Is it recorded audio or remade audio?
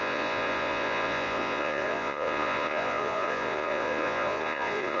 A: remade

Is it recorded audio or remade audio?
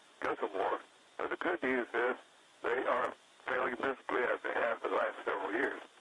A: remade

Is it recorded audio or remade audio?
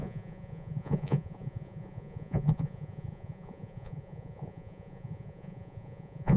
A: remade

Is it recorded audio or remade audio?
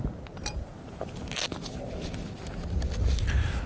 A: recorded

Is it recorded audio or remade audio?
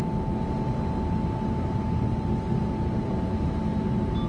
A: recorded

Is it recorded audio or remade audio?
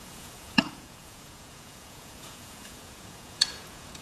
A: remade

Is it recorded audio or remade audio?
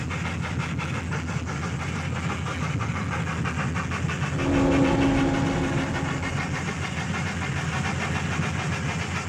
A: recorded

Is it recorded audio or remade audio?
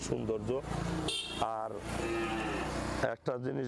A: recorded